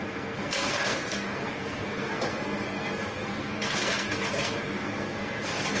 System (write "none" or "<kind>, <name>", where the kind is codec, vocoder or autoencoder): codec, SNAC